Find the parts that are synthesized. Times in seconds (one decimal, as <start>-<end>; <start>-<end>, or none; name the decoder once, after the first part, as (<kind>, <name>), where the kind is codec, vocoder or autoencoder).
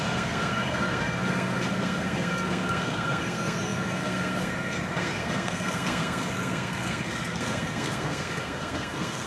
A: 0.0-9.3 (codec, SNAC)